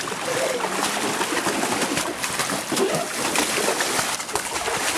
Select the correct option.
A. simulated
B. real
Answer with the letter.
A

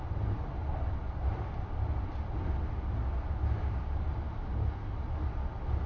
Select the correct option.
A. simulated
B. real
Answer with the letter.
B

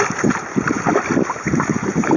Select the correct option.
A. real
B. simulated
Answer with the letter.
A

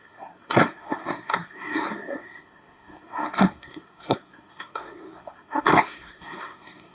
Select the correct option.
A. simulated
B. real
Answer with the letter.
A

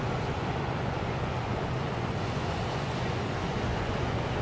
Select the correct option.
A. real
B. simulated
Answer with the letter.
B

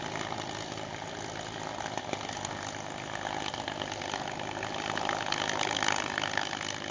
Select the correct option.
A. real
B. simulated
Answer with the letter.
A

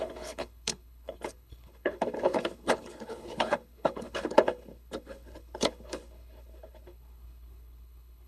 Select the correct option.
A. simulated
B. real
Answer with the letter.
A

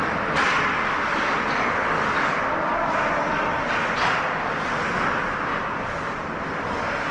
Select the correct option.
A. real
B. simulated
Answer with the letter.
A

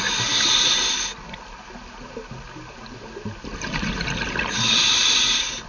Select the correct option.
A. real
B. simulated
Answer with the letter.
A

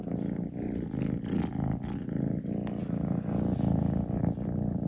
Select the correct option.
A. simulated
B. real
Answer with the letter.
B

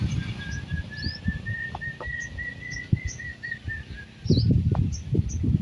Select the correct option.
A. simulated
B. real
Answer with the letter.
B